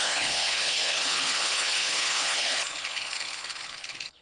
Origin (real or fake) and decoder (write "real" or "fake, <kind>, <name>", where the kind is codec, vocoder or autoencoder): fake, codec, HILCodec